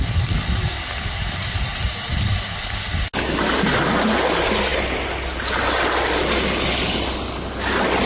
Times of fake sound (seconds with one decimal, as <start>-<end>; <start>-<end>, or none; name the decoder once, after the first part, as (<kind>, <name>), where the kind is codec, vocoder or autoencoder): none